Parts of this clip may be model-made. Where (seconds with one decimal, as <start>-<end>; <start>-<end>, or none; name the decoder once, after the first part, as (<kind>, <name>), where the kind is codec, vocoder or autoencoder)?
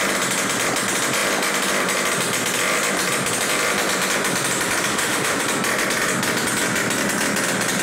4.9-5.4 (autoencoder, DAC-VAE)